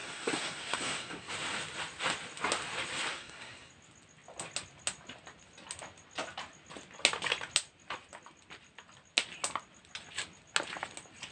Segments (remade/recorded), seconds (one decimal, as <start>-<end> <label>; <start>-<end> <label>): 0.0-1.3 remade; 1.3-3.1 recorded; 3.1-3.7 remade; 3.7-11.3 recorded